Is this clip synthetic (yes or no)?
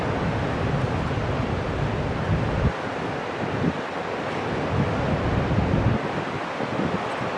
no